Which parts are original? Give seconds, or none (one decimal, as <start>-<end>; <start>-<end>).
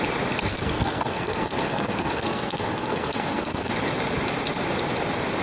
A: 0.0-0.5; 3.7-5.4